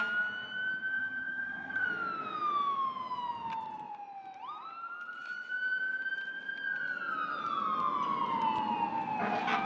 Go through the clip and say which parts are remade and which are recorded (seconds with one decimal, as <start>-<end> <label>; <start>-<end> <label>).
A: 0.0-0.9 recorded; 0.9-1.9 remade; 1.9-9.6 recorded